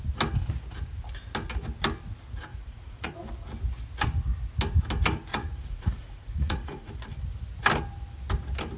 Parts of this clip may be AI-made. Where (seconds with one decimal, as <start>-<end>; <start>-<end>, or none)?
2.5-3.1; 5.3-6.9